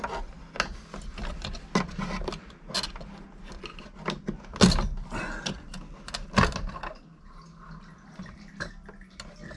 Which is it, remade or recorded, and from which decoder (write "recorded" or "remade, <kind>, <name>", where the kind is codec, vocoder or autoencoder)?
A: recorded